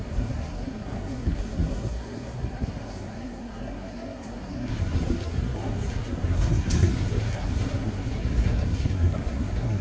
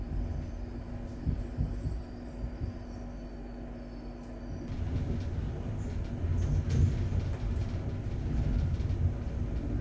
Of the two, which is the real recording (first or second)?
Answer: second